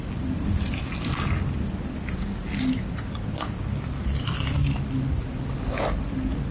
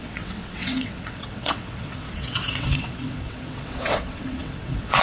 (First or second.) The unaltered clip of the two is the first